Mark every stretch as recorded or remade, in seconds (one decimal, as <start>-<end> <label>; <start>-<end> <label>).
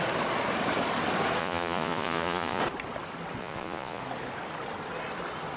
0.0-1.4 recorded; 1.4-2.6 remade; 2.6-3.4 recorded; 3.4-4.0 remade; 4.0-5.6 recorded